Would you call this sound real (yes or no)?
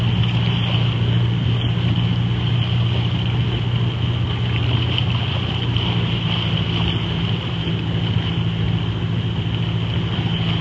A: yes